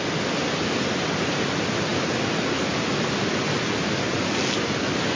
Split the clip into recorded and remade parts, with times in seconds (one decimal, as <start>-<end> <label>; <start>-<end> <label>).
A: 0.0-5.2 recorded